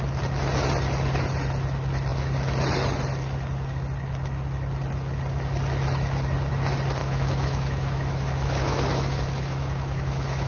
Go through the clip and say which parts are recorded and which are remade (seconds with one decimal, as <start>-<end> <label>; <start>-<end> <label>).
0.0-7.0 recorded; 7.0-10.5 remade